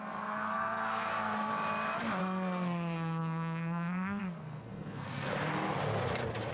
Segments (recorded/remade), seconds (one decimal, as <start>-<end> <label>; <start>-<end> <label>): 0.0-1.5 remade; 1.5-2.2 recorded; 2.2-5.3 remade; 5.3-6.5 recorded